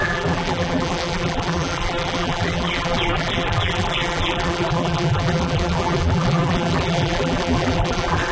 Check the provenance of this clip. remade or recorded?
remade